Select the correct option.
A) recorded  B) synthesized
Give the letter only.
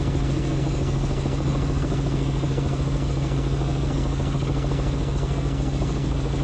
B